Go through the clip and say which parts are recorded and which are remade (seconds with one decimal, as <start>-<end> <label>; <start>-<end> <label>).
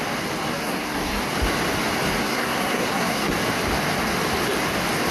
0.0-0.6 recorded; 0.6-1.2 remade; 1.2-2.2 recorded; 2.2-3.3 remade; 3.3-5.1 recorded